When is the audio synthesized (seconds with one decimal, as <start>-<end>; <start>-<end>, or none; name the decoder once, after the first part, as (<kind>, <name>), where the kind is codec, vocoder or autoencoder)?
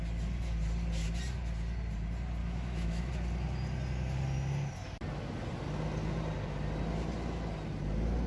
2.4-3.1 (autoencoder, DAC-VAE)